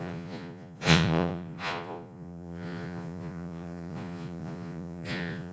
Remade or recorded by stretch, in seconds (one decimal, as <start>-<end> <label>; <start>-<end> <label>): 0.0-5.5 remade